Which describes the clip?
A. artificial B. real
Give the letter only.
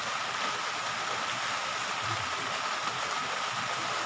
B